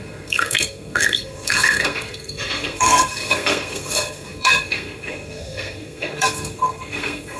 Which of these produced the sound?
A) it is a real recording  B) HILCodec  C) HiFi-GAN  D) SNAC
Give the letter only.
D